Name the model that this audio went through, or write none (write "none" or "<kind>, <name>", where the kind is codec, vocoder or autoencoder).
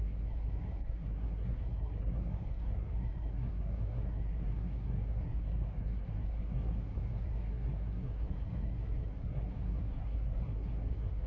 codec, SNAC